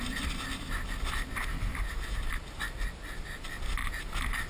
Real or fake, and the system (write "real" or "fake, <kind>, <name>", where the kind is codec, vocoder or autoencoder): real